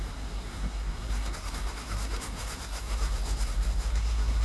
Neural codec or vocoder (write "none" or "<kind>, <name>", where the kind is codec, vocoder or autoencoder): codec, SNAC